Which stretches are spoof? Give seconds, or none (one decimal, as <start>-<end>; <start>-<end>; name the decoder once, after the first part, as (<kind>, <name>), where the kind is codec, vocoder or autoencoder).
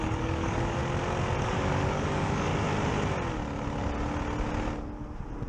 0.0-0.8 (codec, DAC); 1.4-2.5